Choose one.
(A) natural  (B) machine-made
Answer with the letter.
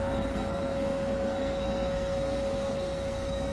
B